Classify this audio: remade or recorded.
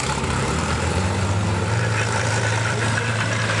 remade